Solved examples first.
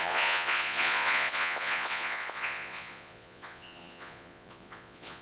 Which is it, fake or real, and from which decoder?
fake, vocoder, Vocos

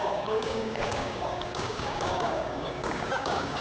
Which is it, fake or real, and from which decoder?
fake, codec, DAC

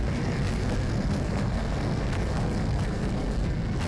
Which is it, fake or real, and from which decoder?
fake, codec, SNAC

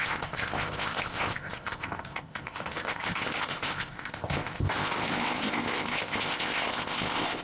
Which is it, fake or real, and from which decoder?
fake, codec, ZipCodec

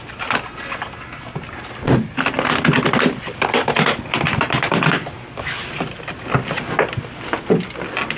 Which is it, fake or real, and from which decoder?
real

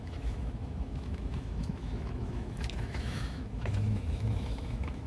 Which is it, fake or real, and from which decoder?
fake, autoencoder, DAC-VAE